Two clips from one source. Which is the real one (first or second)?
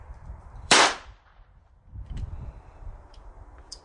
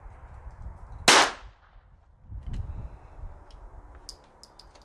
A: second